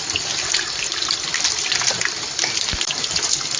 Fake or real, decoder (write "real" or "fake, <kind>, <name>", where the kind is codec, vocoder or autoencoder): real